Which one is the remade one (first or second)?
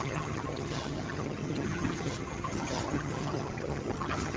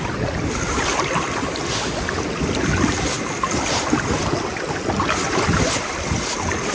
first